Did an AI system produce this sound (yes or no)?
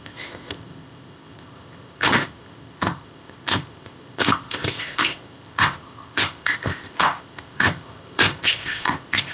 yes